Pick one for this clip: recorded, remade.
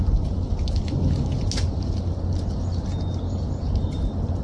recorded